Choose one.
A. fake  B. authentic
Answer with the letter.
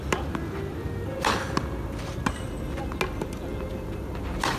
B